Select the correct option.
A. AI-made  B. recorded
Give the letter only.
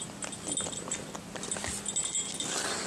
B